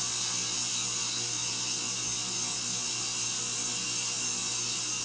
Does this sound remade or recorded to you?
recorded